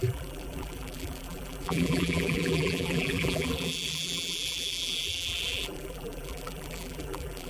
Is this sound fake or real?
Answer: fake